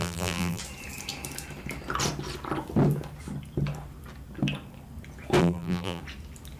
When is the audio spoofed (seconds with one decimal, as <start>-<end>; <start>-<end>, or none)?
0.0-0.6; 5.4-6.0